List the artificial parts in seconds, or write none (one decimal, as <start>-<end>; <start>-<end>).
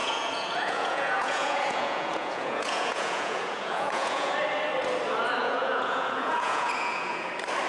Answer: 0.0-4.3; 5.4-7.3